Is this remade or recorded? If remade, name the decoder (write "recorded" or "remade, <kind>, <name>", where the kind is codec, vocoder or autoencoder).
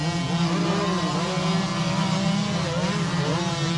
recorded